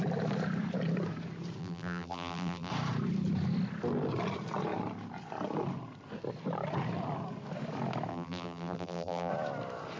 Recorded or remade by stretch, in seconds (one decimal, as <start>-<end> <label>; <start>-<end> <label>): 0.0-1.6 recorded; 1.6-2.7 remade; 2.7-8.1 recorded; 8.1-9.3 remade; 9.3-10.0 recorded